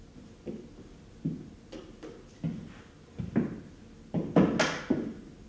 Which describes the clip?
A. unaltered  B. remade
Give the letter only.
A